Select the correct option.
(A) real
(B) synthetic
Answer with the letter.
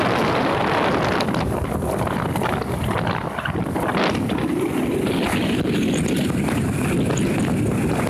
A